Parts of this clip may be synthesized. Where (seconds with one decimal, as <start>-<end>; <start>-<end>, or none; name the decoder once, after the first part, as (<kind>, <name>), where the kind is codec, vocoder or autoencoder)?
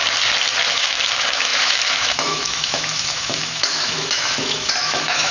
0.7-5.3 (autoencoder, DAC-VAE)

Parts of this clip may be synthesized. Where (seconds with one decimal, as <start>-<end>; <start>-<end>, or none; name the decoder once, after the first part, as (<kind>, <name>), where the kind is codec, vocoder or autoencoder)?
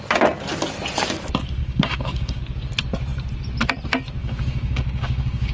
1.6-2.4 (codec, DAC); 4.2-5.5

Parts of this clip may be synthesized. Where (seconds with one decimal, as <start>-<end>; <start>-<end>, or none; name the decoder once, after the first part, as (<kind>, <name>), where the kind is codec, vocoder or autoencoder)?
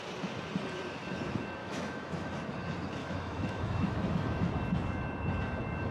1.6-2.3 (autoencoder, DAC-VAE); 3.0-4.5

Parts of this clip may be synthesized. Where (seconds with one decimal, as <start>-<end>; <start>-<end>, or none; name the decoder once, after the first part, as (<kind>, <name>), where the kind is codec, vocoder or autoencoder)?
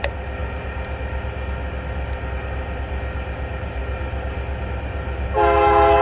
none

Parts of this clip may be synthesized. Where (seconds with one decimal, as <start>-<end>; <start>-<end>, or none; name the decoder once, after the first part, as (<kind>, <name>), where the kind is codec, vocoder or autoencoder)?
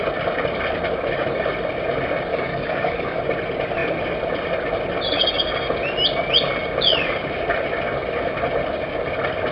2.3-3.2 (codec, DAC)